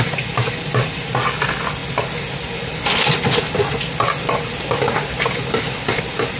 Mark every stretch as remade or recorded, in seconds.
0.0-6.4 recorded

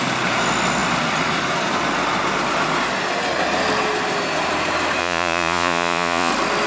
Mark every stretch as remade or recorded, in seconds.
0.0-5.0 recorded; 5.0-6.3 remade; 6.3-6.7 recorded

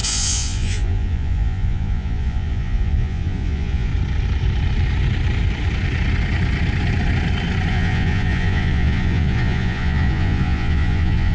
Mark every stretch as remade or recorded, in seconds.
0.0-3.9 remade; 3.9-7.7 recorded; 7.7-11.3 remade